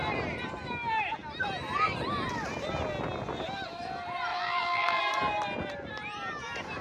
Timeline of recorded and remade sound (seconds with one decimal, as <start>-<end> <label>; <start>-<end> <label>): 0.0-4.3 recorded; 4.3-5.0 remade; 5.0-6.8 recorded